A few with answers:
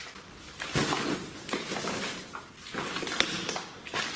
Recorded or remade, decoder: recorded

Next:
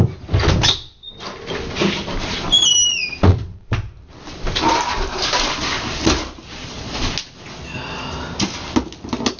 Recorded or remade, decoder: recorded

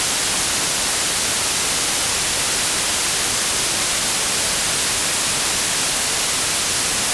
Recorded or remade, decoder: recorded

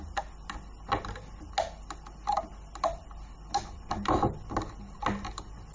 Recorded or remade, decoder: recorded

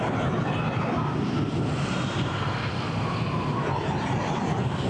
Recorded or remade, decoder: recorded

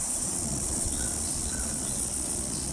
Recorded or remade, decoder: remade, vocoder, Vocos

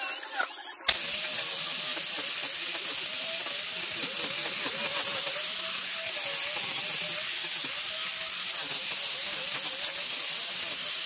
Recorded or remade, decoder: recorded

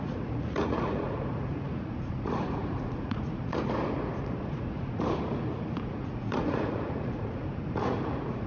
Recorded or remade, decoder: remade, vocoder, Vocos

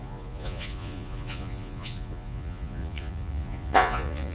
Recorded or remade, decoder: remade, vocoder, Vocos